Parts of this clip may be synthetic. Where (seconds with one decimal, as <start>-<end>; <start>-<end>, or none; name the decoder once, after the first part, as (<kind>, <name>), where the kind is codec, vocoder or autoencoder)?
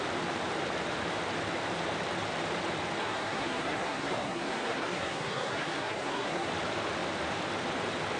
3.0-6.5 (codec, SNAC)